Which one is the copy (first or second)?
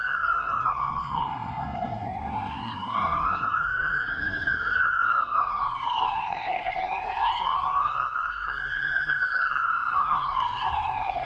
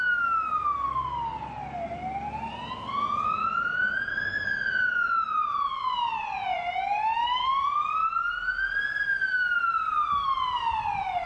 first